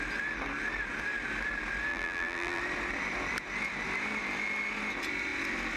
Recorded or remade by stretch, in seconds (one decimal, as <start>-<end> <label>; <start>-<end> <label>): 0.0-1.9 recorded; 1.9-2.6 remade; 2.6-5.8 recorded